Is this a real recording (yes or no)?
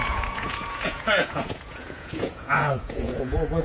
no